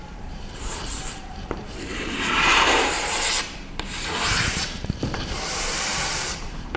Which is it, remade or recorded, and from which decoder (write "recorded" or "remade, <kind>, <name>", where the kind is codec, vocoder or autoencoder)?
remade, vocoder, BigVGAN v2